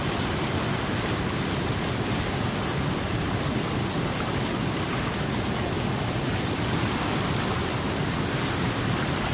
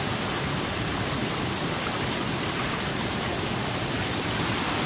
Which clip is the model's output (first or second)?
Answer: second